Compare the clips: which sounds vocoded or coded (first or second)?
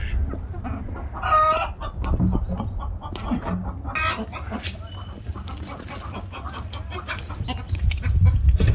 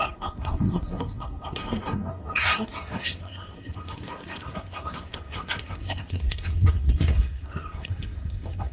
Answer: second